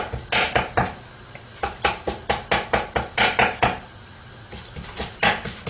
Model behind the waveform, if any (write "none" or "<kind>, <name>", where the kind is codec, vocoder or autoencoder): none